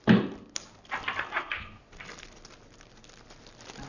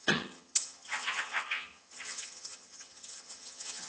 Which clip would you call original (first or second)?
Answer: first